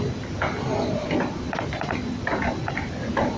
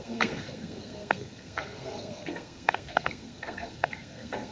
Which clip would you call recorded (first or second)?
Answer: first